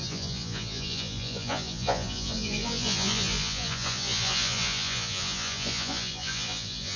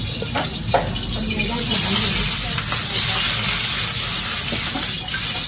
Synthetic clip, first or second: first